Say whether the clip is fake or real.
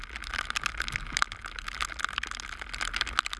real